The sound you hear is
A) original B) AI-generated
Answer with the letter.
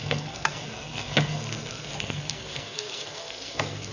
B